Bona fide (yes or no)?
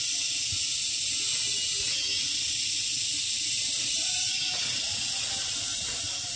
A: yes